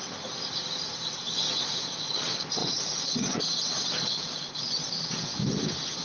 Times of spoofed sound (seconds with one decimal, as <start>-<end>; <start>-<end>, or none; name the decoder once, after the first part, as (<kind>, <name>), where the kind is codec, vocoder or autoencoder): 1.2-5.3 (vocoder, Vocos)